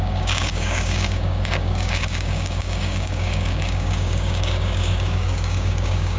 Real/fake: fake